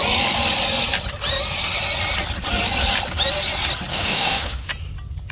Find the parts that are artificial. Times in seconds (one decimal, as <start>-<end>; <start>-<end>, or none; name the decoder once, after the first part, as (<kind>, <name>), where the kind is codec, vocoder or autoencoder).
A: 3.9-4.7 (autoencoder, DAC-VAE)